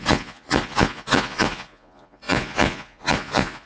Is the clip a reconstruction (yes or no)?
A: yes